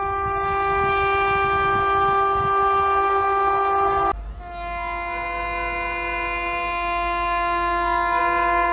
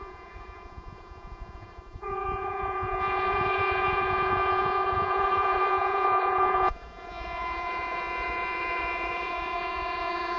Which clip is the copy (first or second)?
second